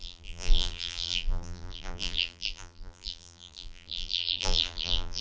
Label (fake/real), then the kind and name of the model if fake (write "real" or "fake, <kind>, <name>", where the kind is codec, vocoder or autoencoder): fake, vocoder, BigVGAN v2